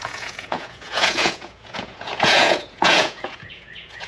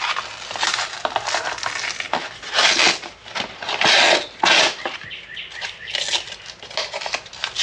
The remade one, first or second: first